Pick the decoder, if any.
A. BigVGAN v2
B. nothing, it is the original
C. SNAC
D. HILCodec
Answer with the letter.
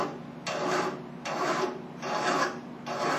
B